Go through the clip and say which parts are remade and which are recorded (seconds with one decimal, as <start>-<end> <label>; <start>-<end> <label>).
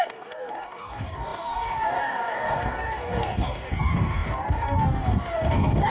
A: 0.0-5.9 remade